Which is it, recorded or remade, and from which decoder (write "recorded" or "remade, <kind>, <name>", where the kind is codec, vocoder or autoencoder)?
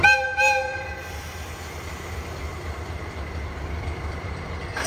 recorded